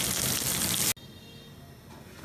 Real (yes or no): yes